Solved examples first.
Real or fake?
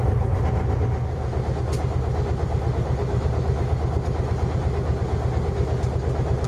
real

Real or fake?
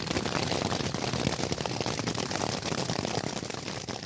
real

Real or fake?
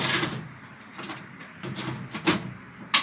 real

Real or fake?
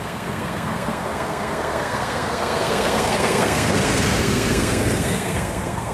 fake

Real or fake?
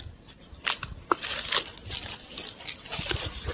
real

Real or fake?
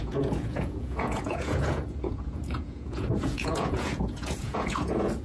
fake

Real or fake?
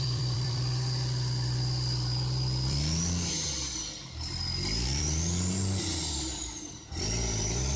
fake